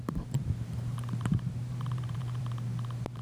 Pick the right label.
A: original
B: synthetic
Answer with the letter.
B